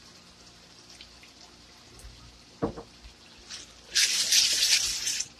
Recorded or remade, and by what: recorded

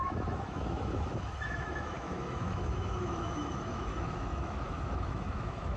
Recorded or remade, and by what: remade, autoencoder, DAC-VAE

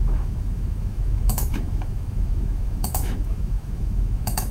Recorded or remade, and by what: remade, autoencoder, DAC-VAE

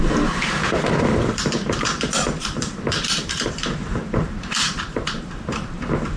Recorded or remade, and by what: remade, vocoder, BigVGAN v2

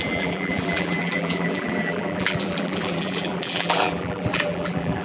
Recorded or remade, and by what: remade, vocoder, BigVGAN v2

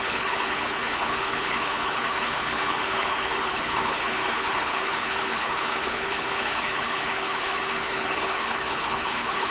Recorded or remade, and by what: remade, codec, HILCodec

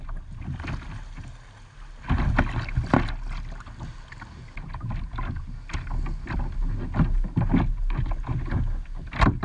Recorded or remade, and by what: recorded